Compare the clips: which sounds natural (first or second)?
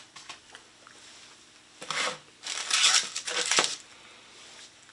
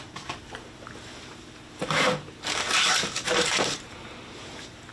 first